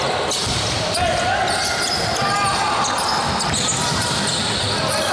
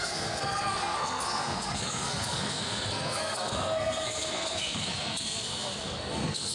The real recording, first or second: first